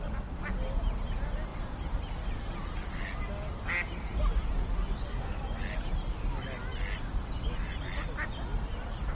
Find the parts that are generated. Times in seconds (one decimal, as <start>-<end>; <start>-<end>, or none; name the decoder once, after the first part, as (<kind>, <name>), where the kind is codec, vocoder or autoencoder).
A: none